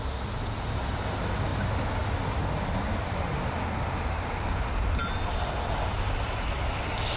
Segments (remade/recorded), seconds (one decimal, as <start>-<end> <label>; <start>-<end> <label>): 0.0-7.2 recorded